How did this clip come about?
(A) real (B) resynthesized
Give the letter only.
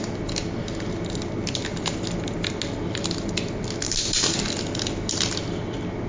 A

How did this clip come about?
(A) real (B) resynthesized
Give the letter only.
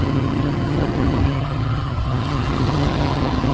B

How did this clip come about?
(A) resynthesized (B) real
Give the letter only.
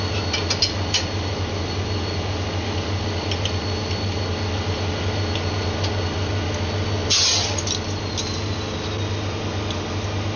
B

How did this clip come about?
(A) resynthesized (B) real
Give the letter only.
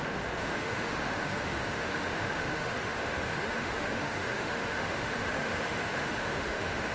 A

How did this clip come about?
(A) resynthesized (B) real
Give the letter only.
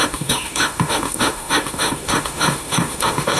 A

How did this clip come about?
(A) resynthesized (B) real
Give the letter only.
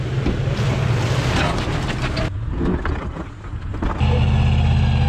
B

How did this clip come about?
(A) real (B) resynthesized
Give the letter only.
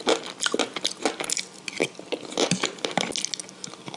A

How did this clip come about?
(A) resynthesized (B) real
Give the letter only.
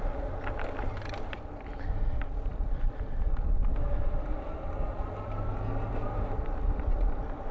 B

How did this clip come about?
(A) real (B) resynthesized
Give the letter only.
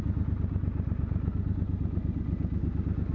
A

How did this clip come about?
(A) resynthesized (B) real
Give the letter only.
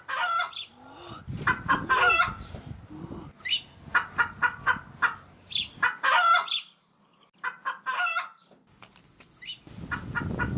B